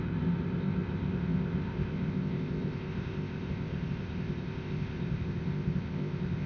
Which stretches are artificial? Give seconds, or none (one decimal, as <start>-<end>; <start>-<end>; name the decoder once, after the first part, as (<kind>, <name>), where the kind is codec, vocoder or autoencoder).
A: 0.0-6.5 (codec, ZipCodec)